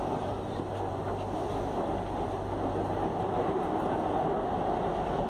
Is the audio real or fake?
real